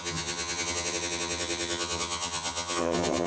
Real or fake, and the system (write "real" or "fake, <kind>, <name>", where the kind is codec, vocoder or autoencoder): fake, vocoder, HiFi-GAN